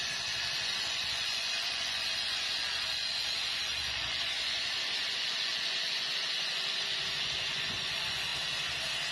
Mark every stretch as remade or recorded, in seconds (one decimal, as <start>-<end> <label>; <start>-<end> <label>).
0.0-8.3 remade; 8.3-9.1 recorded